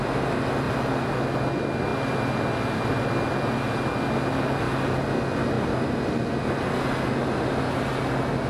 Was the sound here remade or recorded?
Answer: recorded